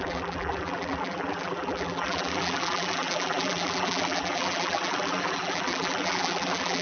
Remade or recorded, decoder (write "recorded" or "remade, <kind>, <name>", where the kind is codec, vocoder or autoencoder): remade, vocoder, BigVGAN v2